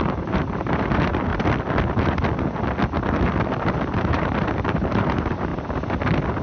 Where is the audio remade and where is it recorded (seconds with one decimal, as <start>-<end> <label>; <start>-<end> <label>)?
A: 0.0-1.3 remade; 1.3-4.0 recorded; 4.0-5.5 remade; 5.5-6.4 recorded